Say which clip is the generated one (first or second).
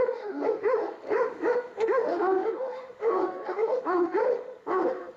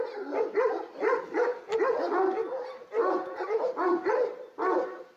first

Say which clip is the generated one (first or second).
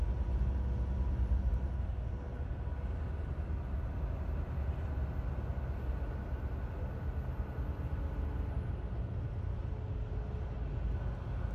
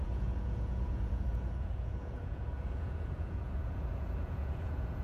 second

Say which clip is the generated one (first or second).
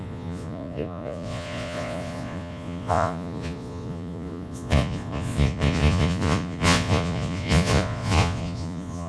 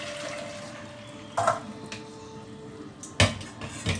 first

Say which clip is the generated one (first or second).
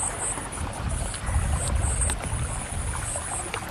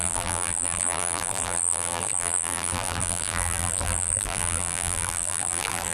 second